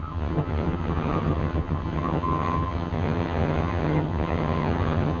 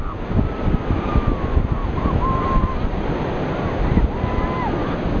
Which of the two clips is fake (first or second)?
first